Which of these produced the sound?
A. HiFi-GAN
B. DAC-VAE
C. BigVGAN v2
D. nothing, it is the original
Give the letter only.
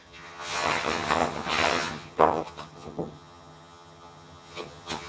A